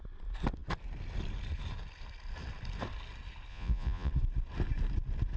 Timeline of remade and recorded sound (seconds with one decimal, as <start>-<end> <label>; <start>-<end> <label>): 0.0-3.5 recorded; 3.5-4.1 remade; 4.1-5.4 recorded